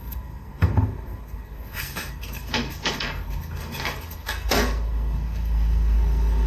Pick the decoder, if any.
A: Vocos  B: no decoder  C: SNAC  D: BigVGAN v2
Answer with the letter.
C